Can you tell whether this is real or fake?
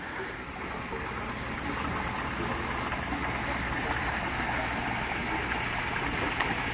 real